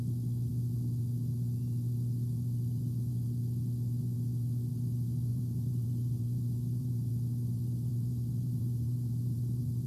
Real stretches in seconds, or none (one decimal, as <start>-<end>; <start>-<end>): 0.0-5.3; 7.1-7.9